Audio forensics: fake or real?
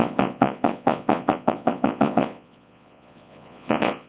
fake